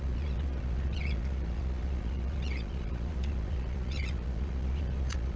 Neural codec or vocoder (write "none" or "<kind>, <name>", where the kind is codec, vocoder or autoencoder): vocoder, Vocos